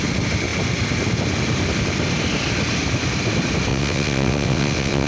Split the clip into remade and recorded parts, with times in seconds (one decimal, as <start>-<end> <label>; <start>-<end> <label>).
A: 0.0-3.7 recorded; 3.7-5.1 remade